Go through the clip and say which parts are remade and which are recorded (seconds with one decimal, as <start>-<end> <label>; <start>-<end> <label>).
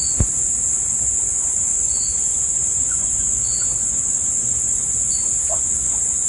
0.0-1.7 recorded; 1.7-5.5 remade; 5.5-6.3 recorded